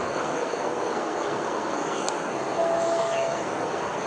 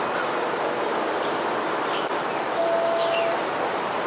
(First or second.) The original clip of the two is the second